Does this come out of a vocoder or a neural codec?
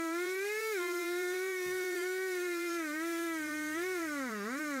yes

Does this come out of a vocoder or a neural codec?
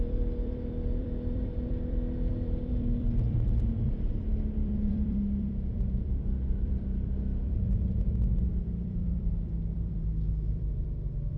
yes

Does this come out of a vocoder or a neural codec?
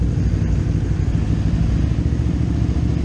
no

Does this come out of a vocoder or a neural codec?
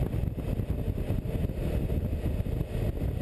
no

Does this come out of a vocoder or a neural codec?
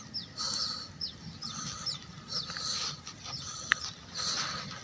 no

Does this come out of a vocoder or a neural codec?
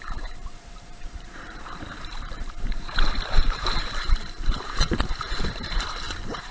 yes